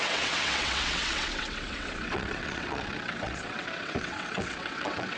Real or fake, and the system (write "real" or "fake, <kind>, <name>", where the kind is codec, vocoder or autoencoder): fake, vocoder, WaveNeXt